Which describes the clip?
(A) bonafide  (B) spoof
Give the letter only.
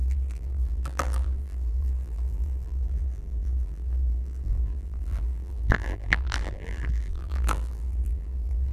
B